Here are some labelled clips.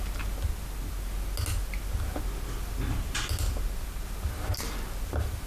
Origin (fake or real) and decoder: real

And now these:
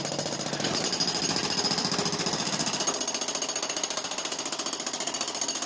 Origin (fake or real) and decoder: real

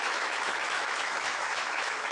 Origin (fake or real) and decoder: fake, autoencoder, DAC-VAE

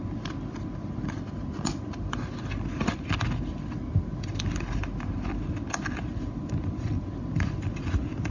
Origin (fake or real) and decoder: real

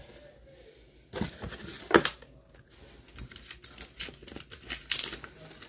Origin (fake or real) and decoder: real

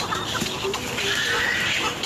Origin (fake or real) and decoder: real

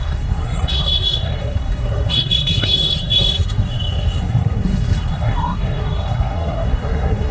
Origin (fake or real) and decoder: fake, codec, SNAC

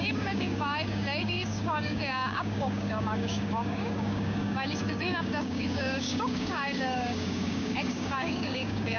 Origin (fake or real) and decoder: fake, codec, DAC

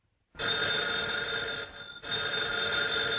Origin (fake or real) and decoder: real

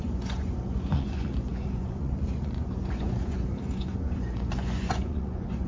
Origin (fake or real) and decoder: fake, vocoder, Vocos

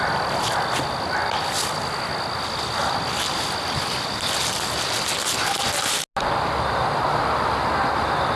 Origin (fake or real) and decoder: real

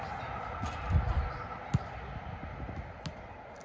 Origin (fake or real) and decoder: real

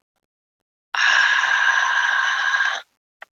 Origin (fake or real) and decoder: real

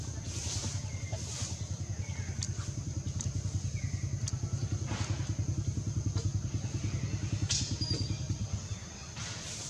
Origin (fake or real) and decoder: real